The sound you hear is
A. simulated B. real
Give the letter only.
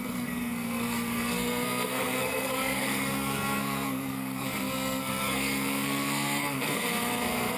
A